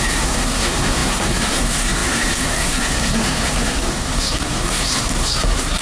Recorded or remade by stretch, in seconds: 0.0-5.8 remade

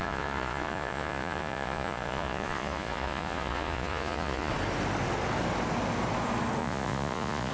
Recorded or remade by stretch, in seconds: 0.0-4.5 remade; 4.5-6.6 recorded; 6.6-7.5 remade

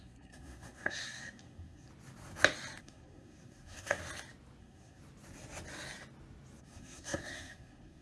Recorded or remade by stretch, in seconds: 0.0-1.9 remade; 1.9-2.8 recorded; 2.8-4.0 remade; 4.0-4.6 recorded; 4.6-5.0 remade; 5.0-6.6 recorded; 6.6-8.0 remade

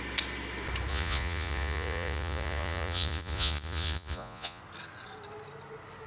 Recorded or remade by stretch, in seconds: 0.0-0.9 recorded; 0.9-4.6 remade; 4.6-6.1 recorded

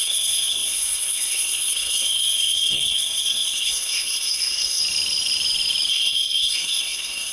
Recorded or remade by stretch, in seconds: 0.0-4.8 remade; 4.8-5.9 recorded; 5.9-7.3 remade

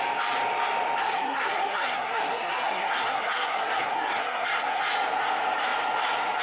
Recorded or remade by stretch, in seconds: 0.0-1.0 recorded; 1.0-4.8 remade; 4.8-6.4 recorded

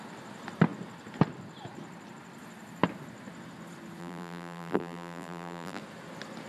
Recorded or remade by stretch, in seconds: 0.0-4.0 recorded; 4.0-5.8 remade; 5.8-6.5 recorded